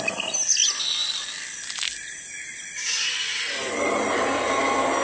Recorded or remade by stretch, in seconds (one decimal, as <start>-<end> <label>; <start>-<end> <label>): 0.0-5.0 recorded